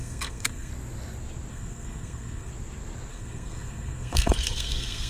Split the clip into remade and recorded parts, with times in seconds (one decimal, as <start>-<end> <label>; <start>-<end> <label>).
0.0-0.7 remade; 0.7-1.5 recorded; 1.5-2.5 remade; 2.5-3.1 recorded; 3.1-5.1 remade